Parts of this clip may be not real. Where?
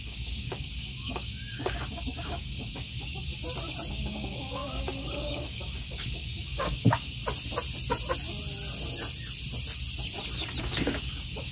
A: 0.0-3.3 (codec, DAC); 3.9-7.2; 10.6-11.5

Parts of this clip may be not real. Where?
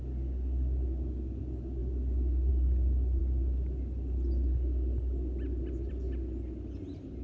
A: none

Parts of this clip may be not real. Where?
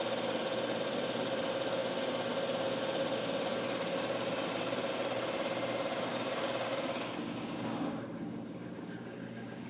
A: 6.1-9.7 (codec, DAC)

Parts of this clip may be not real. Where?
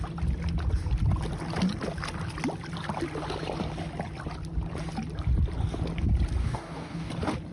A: 6.4-7.1 (codec, DAC)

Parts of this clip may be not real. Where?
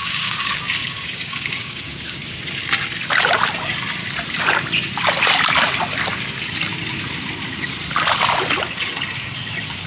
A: 0.0-2.4 (codec, DAC)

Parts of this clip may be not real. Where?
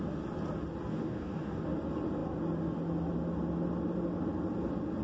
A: 0.9-1.6 (codec, DAC)